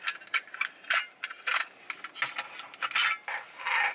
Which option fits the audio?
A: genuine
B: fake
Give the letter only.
A